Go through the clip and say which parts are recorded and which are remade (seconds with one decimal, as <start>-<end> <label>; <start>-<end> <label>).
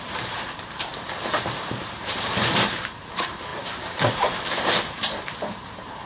0.0-0.9 remade; 0.9-1.4 recorded; 1.4-6.1 remade